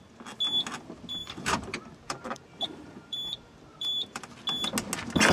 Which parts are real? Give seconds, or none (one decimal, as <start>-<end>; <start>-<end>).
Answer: 0.0-1.2; 4.4-5.3